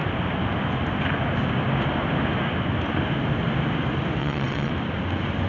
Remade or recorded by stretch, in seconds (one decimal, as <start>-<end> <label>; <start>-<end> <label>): 0.0-4.2 recorded; 4.2-4.7 remade; 4.7-5.5 recorded